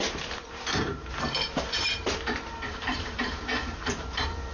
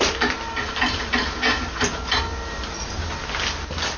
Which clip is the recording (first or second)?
second